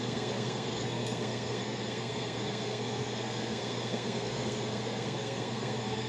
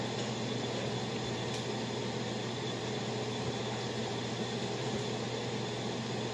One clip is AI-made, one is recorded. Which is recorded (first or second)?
second